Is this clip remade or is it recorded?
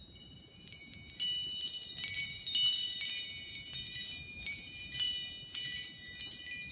remade